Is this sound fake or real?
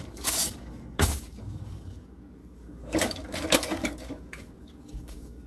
fake